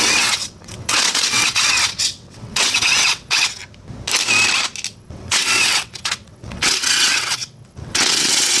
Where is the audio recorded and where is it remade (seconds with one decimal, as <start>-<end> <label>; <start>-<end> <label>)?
0.0-3.6 remade; 3.6-4.9 recorded; 4.9-8.6 remade